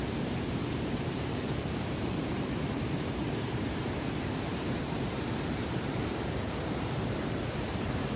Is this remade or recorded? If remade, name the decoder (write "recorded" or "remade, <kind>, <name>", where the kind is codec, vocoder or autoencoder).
remade, vocoder, BigVGAN v2